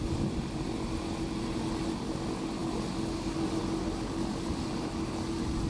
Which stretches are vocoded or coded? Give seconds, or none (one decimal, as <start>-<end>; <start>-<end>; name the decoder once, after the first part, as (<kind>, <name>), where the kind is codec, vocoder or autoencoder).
none